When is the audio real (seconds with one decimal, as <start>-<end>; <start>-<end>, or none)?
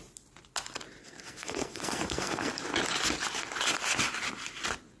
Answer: 0.0-1.0; 2.5-5.0